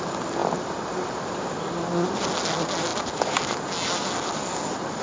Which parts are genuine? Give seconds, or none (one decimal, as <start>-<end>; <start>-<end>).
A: 0.0-5.0